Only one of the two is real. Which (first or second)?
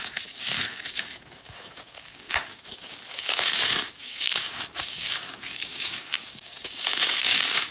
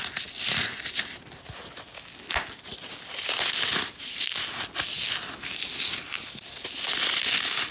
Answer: second